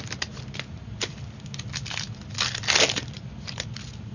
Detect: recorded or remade recorded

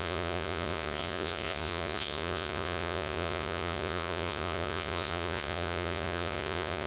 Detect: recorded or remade remade